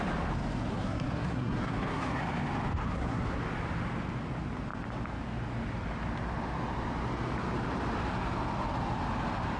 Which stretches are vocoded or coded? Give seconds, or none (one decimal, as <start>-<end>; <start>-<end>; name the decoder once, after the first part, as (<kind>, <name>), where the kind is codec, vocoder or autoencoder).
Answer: 0.7-2.2 (codec, SNAC); 2.8-3.4